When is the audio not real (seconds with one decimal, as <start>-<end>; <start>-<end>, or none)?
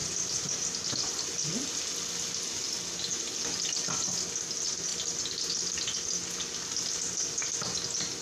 none